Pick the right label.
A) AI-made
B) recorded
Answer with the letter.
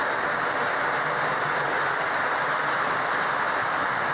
B